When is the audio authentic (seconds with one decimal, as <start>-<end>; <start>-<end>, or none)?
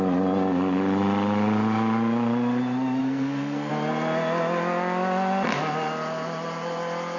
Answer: 0.0-3.0; 3.7-7.2